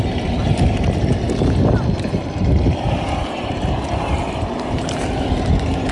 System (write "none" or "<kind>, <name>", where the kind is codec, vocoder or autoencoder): vocoder, BigVGAN v2